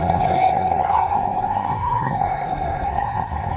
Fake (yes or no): yes